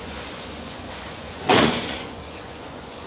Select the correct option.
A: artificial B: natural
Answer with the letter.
A